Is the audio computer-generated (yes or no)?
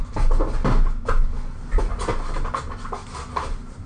no